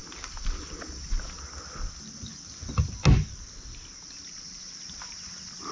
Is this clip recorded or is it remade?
recorded